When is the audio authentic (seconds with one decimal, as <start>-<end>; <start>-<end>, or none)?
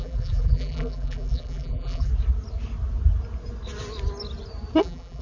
2.1-4.8